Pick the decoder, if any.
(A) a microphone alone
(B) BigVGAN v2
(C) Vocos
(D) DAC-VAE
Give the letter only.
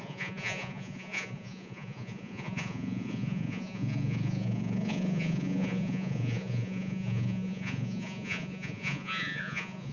C